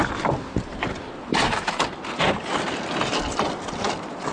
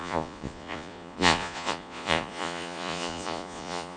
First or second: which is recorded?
first